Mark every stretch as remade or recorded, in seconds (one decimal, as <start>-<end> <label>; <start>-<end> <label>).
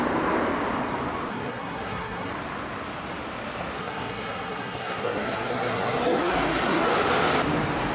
0.0-1.3 recorded; 1.3-2.3 remade; 2.3-3.8 recorded; 3.8-6.9 remade; 6.9-7.9 recorded